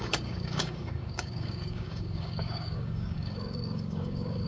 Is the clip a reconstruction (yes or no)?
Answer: yes